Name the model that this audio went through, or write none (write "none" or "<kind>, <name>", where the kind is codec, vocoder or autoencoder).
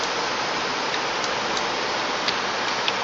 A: none